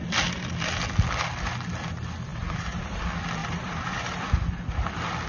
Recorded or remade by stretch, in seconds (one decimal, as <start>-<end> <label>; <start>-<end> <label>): 0.0-2.3 recorded; 2.3-3.0 remade; 3.0-3.4 recorded; 3.4-4.2 remade; 4.2-5.3 recorded